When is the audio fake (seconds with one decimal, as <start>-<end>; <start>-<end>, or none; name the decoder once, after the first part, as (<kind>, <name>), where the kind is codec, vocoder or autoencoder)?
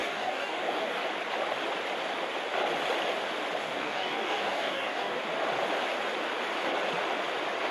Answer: 0.0-1.0 (codec, DAC); 3.6-5.2